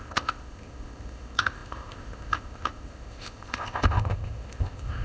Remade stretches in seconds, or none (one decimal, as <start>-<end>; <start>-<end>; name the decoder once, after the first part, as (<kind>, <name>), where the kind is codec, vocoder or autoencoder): 0.0-5.0 (codec, ZipCodec)